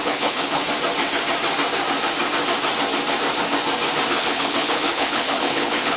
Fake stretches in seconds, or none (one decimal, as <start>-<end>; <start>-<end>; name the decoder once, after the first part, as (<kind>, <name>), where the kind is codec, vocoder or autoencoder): 0.0-0.6 (codec, HILCodec); 4.1-6.0